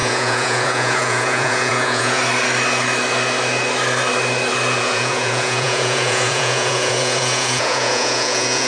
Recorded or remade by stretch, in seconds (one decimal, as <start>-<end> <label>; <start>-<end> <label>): 0.0-2.2 remade; 2.2-4.8 recorded; 4.8-8.7 remade